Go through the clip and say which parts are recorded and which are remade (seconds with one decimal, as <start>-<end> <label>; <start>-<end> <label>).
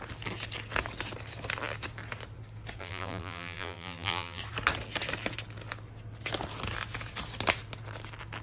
0.0-2.8 recorded; 2.8-4.4 remade; 4.4-8.4 recorded